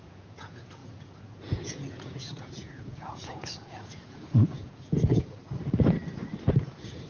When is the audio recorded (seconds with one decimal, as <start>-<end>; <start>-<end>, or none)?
5.4-6.5